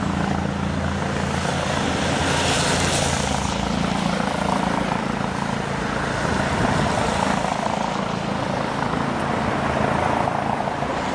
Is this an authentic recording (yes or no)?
yes